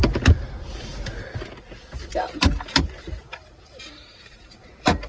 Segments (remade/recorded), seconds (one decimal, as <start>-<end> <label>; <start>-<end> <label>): 0.0-3.3 recorded; 3.3-5.1 remade